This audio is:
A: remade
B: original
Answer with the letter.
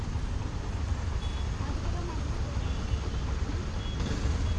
B